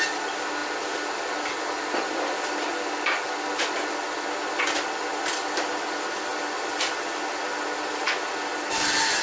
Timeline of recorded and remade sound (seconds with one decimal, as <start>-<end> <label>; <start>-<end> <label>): 0.0-9.2 recorded